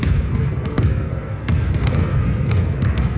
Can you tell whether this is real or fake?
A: fake